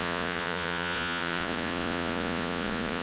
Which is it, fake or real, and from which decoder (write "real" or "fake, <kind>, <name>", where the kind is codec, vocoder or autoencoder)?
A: fake, vocoder, Vocos